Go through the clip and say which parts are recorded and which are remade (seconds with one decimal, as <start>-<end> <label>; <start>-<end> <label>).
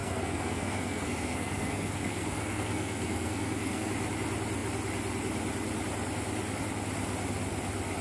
0.0-3.9 remade; 3.9-8.0 recorded